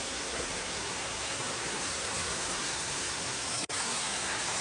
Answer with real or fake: fake